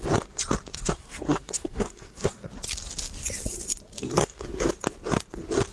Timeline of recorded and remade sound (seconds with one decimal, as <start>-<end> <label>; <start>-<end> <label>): 0.0-0.7 recorded; 0.7-2.5 remade; 2.5-4.0 recorded; 4.0-4.7 remade; 4.7-5.7 recorded